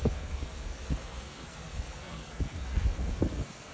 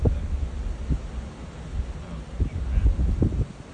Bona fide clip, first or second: second